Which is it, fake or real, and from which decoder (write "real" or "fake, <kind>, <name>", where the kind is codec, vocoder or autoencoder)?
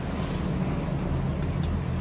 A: real